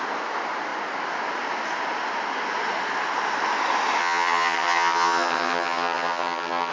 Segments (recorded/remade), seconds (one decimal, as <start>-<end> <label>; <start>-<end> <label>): 0.0-4.0 recorded; 4.0-6.7 remade